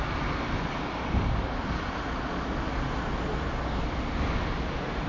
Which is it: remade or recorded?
recorded